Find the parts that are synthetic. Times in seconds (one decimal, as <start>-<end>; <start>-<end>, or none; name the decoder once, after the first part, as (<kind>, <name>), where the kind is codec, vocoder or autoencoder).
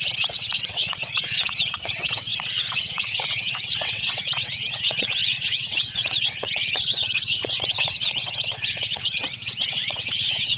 0.0-10.6 (vocoder, WaveNeXt)